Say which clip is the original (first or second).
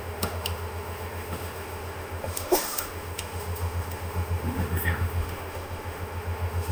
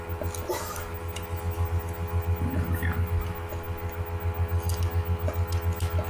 second